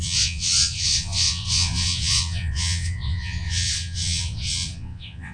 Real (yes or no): no